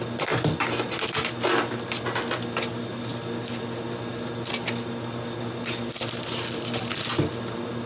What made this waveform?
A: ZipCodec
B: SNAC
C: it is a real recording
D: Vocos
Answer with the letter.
C